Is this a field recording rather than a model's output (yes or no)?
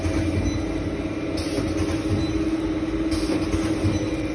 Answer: yes